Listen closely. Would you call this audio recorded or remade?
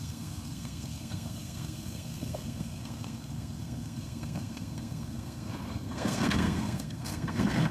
remade